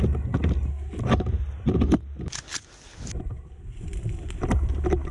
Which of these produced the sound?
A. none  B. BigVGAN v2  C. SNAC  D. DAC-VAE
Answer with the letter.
A